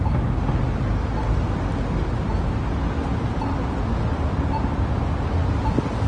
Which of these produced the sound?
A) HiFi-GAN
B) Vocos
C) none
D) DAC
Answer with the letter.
C